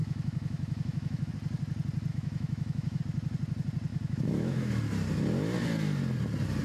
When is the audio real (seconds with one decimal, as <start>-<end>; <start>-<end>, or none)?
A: 1.3-2.1; 3.0-3.9; 4.7-6.6